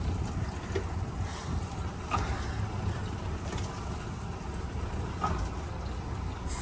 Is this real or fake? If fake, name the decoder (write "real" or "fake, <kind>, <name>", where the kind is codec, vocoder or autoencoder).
real